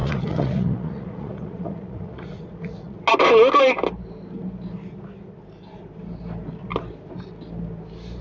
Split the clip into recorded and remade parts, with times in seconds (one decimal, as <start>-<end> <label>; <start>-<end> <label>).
0.0-3.0 remade; 3.0-8.2 recorded